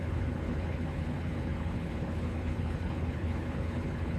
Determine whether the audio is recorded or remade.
remade